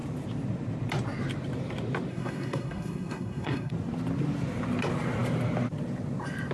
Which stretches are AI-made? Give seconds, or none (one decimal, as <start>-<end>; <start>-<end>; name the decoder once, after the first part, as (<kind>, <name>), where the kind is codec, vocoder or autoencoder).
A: 2.1-3.7 (codec, SNAC)